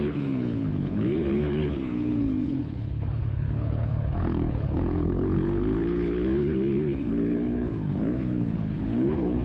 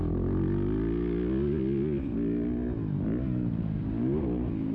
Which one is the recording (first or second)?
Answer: second